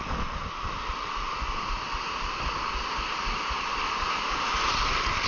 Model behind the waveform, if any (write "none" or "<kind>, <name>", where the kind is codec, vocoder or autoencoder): none